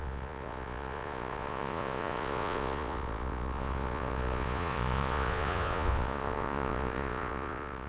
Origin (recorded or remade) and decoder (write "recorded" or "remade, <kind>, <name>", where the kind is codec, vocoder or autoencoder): remade, vocoder, Vocos